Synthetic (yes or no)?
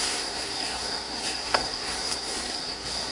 yes